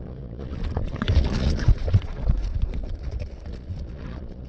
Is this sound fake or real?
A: fake